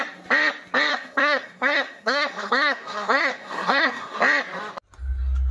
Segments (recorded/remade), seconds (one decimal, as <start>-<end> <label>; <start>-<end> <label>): 0.0-0.9 recorded; 0.9-4.2 remade; 4.2-5.5 recorded